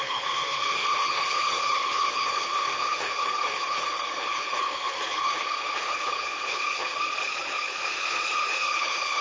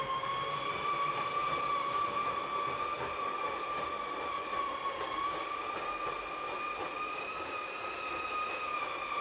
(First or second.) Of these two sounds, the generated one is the first